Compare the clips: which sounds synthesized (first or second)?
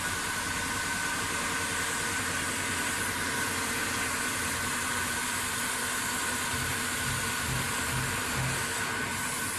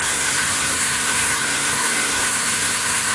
second